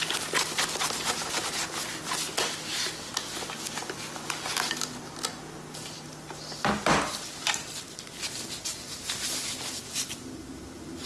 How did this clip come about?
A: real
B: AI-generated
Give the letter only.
A